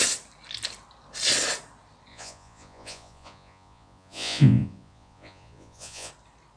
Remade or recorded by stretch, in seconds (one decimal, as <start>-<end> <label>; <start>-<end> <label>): 0.0-2.1 recorded; 2.1-6.1 remade; 6.1-6.6 recorded

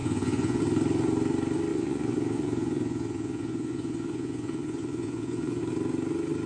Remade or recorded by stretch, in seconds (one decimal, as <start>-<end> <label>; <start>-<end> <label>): 0.0-0.6 remade; 0.6-1.7 recorded; 1.7-5.6 remade; 5.6-6.5 recorded

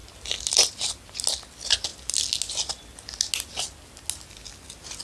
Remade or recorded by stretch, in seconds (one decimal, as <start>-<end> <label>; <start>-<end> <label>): 0.0-5.0 recorded

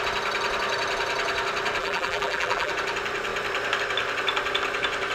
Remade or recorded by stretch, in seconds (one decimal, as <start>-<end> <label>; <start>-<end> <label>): 0.0-1.8 recorded; 1.8-2.7 remade; 2.7-5.1 recorded